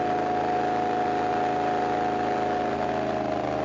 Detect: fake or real real